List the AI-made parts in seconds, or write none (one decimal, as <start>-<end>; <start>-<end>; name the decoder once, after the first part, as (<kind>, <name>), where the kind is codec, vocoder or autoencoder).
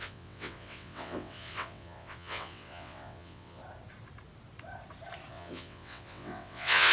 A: 0.0-3.6 (vocoder, WaveNeXt); 5.3-6.9